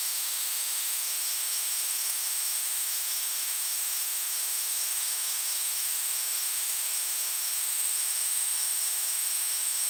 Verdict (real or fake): fake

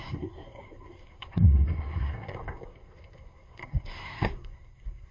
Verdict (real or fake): fake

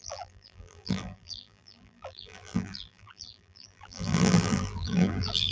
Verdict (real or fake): fake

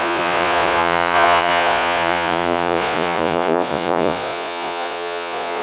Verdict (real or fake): fake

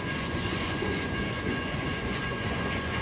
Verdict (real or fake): fake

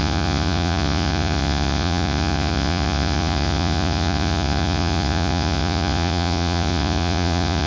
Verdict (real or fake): fake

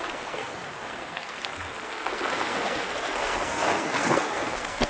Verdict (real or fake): fake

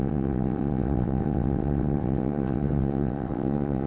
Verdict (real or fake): fake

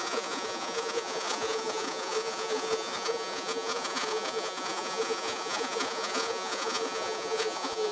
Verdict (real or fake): fake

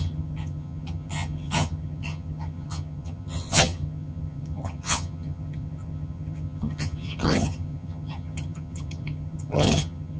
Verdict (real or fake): fake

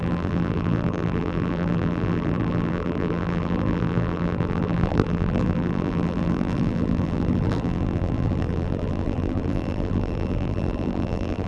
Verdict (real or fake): fake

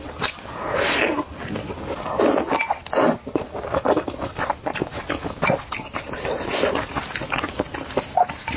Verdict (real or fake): real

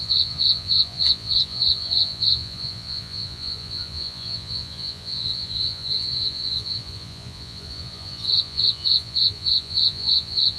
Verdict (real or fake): fake